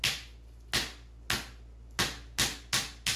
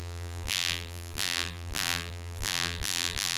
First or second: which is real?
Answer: first